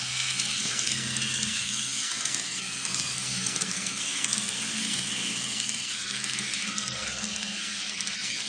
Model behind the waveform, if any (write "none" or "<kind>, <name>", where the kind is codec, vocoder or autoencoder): codec, SNAC